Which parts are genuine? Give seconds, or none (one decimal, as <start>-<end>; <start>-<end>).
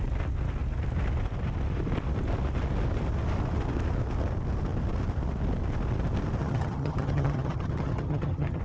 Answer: 0.0-6.4